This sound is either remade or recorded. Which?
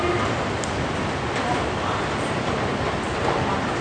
recorded